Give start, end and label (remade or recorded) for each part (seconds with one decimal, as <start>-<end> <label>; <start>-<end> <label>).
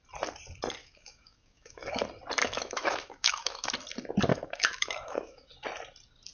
0.0-0.8 recorded; 0.8-2.0 remade; 2.0-2.4 recorded; 2.4-3.7 remade; 3.7-4.3 recorded; 4.3-5.5 remade; 5.5-6.3 recorded